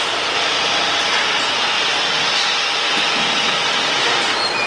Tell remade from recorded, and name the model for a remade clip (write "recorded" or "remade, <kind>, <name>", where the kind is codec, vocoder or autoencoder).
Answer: remade, vocoder, BigVGAN v2